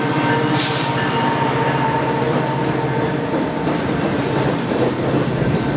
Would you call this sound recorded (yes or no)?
no